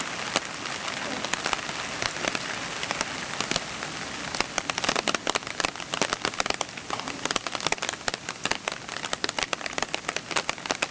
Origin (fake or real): real